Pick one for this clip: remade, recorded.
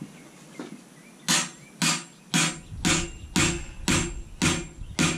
recorded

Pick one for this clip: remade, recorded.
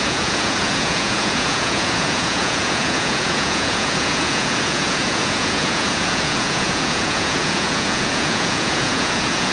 remade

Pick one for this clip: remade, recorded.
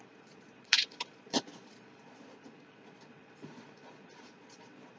remade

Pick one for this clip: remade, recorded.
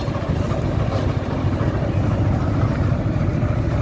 recorded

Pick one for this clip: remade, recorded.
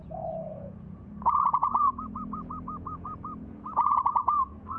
remade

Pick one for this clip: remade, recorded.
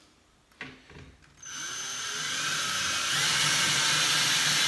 recorded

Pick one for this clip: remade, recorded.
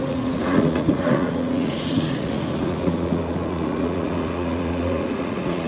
remade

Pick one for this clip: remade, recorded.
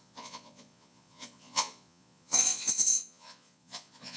remade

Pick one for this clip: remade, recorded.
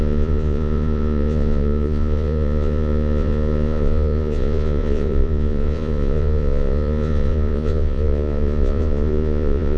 remade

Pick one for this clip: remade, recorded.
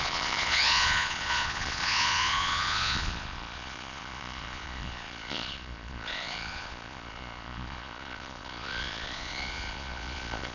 remade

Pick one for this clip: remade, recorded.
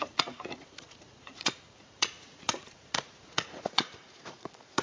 remade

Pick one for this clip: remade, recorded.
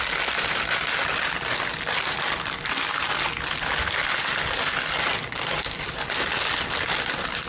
recorded